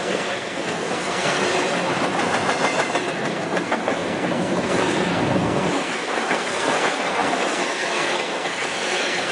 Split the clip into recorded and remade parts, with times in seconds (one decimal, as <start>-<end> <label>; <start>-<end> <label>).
0.0-1.4 remade; 1.4-3.0 recorded; 3.0-9.3 remade